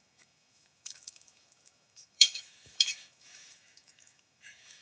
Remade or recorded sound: remade